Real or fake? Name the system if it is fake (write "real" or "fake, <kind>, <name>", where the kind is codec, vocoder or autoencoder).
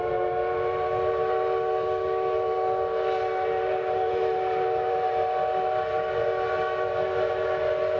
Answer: real